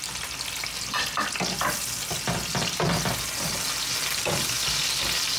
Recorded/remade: recorded